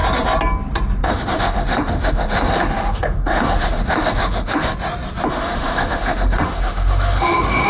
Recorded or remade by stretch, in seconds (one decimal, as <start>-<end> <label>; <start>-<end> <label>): 0.0-1.0 recorded; 1.0-4.7 remade; 4.7-5.3 recorded; 5.3-7.7 remade